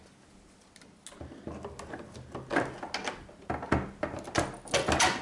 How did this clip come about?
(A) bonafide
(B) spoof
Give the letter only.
A